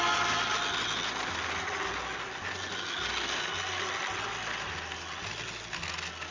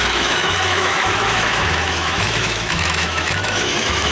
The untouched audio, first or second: first